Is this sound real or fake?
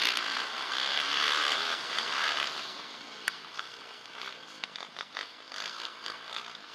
fake